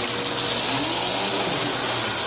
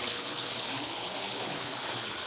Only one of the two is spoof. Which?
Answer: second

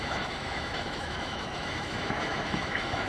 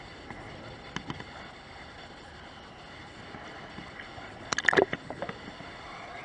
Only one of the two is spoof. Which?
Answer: first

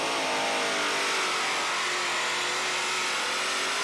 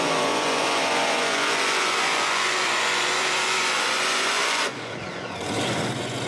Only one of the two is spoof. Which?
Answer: second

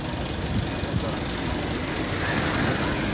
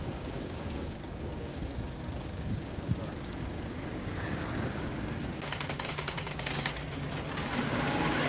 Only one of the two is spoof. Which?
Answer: second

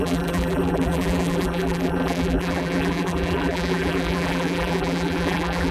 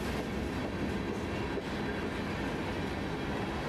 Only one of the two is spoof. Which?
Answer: first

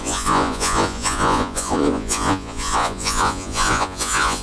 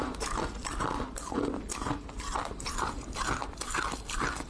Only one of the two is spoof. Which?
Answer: first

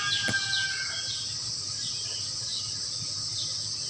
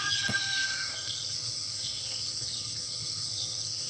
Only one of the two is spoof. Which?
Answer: second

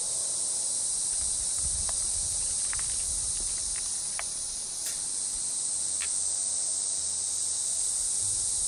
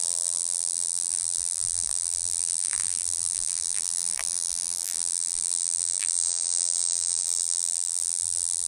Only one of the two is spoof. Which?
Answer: second